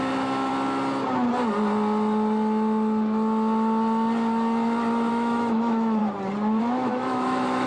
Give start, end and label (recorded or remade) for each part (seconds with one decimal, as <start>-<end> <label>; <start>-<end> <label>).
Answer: 0.0-0.5 remade; 0.5-5.1 recorded; 5.1-6.0 remade; 6.0-6.6 recorded; 6.6-7.7 remade